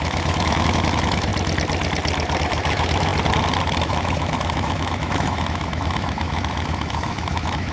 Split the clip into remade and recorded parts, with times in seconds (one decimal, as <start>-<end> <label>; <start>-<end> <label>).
0.0-1.3 remade; 1.3-2.4 recorded; 2.4-3.1 remade; 3.1-3.8 recorded; 3.8-7.7 remade